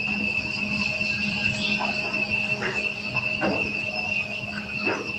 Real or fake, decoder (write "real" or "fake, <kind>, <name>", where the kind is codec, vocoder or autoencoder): real